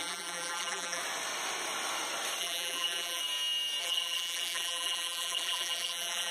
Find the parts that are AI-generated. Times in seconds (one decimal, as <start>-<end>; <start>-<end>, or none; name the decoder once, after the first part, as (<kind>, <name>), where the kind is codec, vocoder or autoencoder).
0.0-1.0 (vocoder, BigVGAN v2); 2.4-3.2; 3.8-6.3